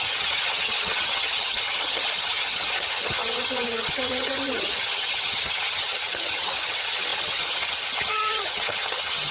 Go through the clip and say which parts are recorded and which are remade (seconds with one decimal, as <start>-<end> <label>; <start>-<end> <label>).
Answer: 0.0-9.3 remade